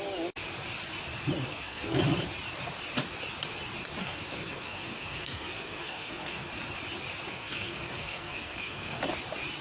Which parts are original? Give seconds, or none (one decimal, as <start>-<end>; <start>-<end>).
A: 0.0-1.5; 2.0-4.0; 6.5-7.3; 9.0-9.6